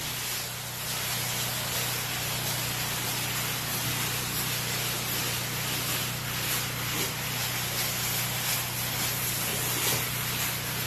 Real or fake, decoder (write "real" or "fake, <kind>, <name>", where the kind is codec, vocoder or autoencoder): real